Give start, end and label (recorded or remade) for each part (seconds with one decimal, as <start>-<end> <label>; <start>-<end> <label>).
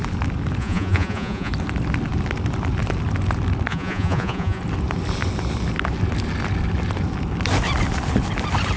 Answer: 0.0-0.6 recorded; 0.6-1.5 remade; 1.5-3.7 recorded; 3.7-4.6 remade; 4.6-8.8 recorded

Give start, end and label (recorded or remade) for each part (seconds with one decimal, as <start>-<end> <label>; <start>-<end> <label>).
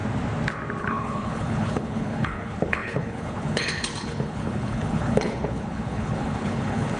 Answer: 0.0-0.8 recorded; 0.8-7.0 remade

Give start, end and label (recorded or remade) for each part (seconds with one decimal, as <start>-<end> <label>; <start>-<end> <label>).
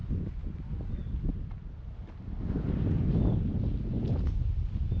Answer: 0.0-0.6 remade; 0.6-5.0 recorded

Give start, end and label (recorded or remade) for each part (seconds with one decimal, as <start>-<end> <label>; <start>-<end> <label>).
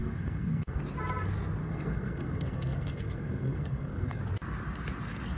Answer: 0.0-0.8 remade; 0.8-1.6 recorded; 1.6-4.2 remade; 4.2-5.4 recorded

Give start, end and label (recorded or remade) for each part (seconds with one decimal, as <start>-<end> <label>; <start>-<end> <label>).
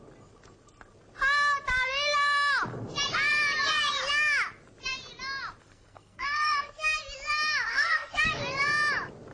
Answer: 0.0-5.6 recorded; 5.6-7.0 remade; 7.0-7.7 recorded; 7.7-8.4 remade; 8.4-9.3 recorded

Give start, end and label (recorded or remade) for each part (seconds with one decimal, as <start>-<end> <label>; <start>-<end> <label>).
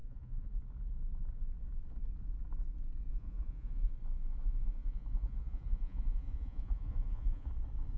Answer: 0.0-0.6 remade; 0.6-3.1 recorded; 3.1-3.9 remade; 3.9-4.4 recorded; 4.4-7.5 remade; 7.5-8.0 recorded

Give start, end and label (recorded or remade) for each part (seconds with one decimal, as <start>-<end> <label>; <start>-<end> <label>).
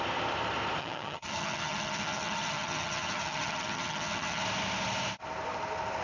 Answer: 0.0-0.8 recorded; 0.8-4.4 remade; 4.4-6.0 recorded